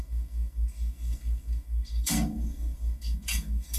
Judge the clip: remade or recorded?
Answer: remade